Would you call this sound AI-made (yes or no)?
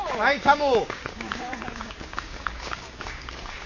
yes